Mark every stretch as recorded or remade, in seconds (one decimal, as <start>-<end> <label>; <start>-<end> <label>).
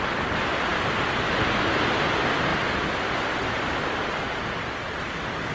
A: 0.0-5.5 recorded